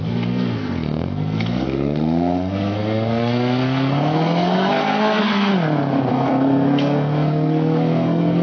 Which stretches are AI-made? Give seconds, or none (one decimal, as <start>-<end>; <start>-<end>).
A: 0.0-5.5; 6.1-8.4